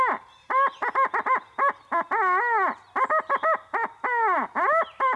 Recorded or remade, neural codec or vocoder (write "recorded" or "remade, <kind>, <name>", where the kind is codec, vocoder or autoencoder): recorded